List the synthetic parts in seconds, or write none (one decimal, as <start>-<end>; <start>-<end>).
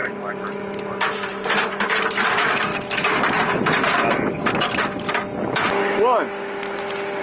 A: 0.0-2.7; 4.5-4.9